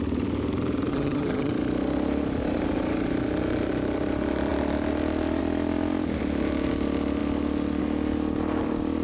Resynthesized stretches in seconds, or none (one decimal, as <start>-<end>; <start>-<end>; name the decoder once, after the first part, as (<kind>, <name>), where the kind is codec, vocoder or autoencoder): 0.9-1.5 (vocoder, HiFi-GAN)